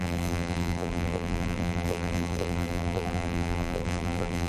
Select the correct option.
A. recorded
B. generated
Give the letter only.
B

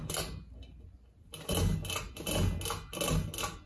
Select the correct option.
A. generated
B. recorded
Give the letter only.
B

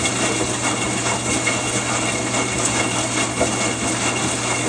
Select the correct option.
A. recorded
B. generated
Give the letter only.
A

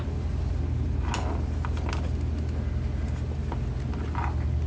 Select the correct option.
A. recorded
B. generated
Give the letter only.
A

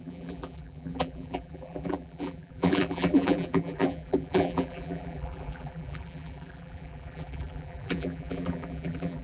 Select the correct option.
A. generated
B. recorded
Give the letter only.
A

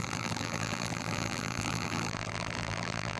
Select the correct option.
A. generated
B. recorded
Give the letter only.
A